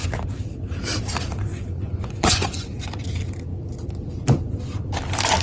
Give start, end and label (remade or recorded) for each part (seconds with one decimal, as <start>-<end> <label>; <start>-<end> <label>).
0.0-1.5 recorded; 1.5-2.7 remade; 2.7-5.4 recorded